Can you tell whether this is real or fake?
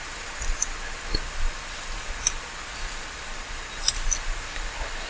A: fake